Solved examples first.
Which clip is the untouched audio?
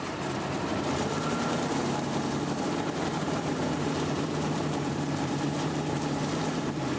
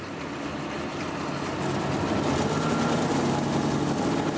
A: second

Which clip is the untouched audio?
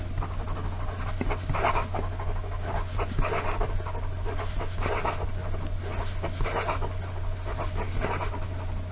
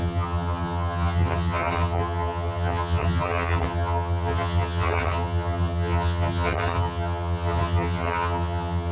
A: first